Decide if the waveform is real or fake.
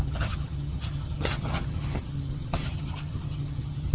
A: fake